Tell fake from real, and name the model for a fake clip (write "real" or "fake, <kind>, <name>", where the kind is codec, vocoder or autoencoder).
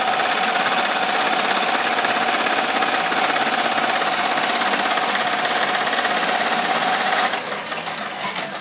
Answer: real